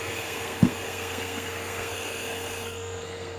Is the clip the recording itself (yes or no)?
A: no